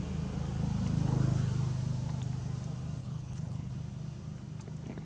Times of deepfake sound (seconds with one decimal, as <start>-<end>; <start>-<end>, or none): 3.0-3.7